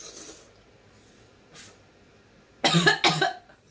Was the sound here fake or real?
real